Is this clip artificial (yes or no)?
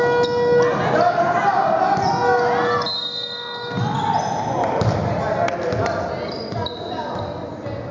no